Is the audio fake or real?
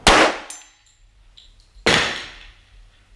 real